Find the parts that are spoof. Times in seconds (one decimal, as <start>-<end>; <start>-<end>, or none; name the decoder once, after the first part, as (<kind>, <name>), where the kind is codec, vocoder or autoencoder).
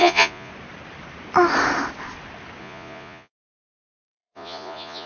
0.0-0.5 (vocoder, Vocos); 2.6-5.1